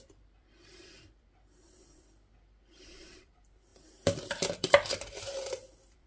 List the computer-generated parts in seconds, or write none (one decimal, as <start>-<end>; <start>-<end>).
0.0-6.1